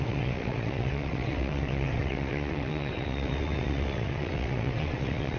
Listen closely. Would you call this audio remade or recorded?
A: remade